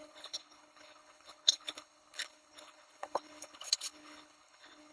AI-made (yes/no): yes